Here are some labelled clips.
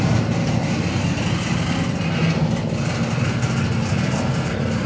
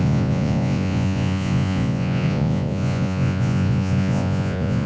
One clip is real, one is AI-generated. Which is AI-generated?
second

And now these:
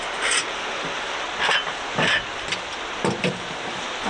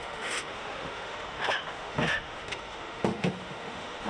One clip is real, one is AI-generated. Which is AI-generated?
second